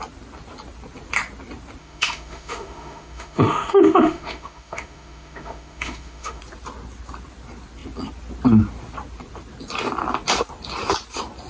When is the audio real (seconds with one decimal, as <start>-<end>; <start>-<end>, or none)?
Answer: 0.0-1.8; 6.4-11.5